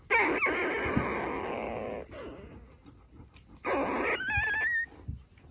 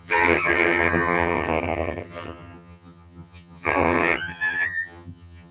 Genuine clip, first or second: first